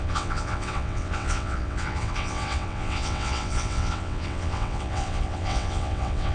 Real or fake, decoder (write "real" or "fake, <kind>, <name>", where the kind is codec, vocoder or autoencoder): fake, vocoder, WaveNeXt